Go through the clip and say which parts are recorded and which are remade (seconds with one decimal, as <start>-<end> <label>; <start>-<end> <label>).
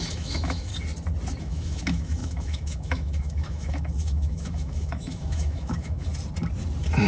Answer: 0.0-0.7 remade; 0.7-1.4 recorded; 1.4-6.1 remade; 6.1-7.1 recorded